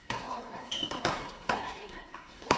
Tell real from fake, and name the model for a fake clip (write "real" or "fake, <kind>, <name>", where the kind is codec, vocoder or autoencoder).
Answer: fake, codec, SNAC